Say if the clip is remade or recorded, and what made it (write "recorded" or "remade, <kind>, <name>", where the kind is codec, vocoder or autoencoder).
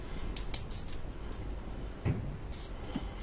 recorded